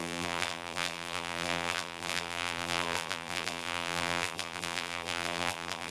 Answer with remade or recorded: remade